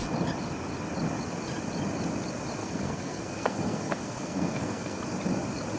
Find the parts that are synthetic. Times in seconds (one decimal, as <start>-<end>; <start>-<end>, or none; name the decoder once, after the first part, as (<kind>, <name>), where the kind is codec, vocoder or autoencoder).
2.6-5.0 (codec, SNAC)